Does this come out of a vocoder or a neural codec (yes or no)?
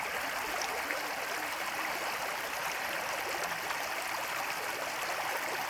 no